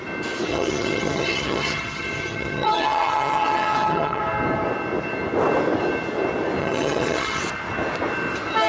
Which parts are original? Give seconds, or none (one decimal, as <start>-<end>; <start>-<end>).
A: 0.0-0.5; 4.2-6.6; 7.4-8.7